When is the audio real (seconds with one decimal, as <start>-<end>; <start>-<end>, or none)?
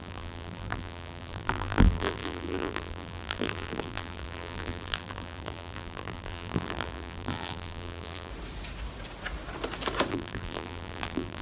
8.3-10.1